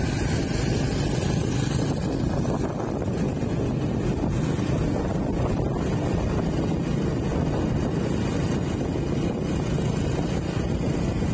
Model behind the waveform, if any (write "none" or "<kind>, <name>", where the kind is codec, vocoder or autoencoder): none